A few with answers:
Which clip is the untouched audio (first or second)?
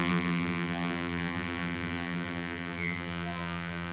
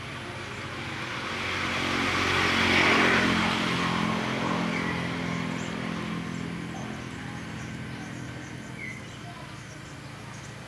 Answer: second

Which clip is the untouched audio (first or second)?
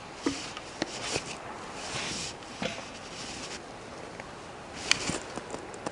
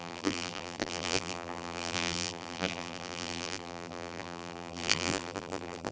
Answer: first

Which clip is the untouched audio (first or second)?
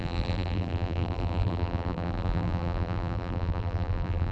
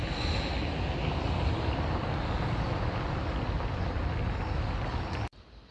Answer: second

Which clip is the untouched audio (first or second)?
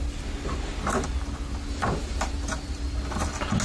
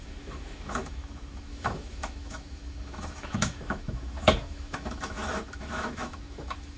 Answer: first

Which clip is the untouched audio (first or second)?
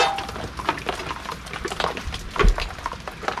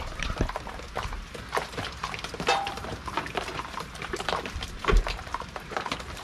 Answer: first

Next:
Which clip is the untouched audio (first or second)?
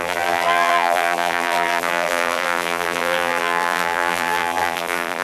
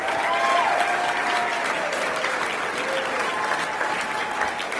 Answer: second